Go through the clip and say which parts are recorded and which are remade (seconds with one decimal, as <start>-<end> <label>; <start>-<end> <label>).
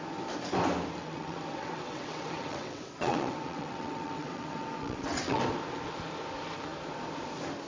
0.0-1.0 recorded; 1.0-5.4 remade; 5.4-7.7 recorded